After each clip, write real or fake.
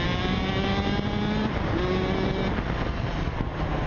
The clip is real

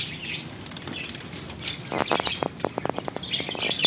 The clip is real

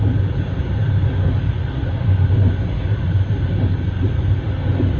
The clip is real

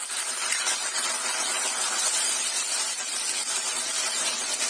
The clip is real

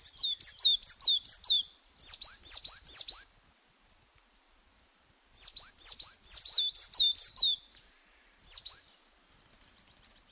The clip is real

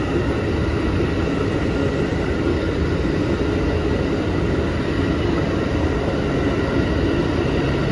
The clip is real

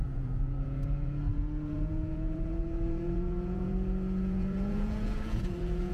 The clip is fake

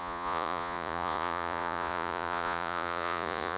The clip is fake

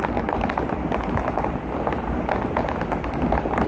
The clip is real